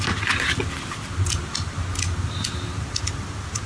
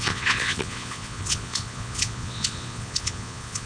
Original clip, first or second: first